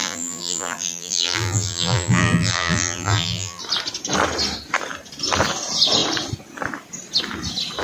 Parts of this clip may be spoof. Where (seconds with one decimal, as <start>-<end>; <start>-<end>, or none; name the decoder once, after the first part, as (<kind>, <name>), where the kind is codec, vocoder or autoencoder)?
0.0-3.6 (vocoder, BigVGAN v2)